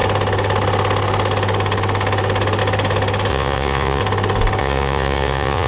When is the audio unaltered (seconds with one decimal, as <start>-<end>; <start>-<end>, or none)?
0.0-3.3; 4.0-4.6